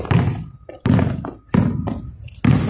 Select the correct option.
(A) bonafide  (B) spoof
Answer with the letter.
A